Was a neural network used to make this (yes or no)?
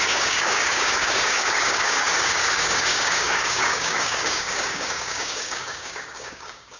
yes